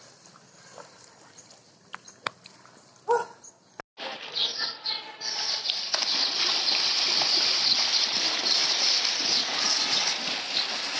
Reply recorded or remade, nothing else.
recorded